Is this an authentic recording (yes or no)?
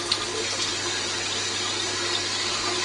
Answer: yes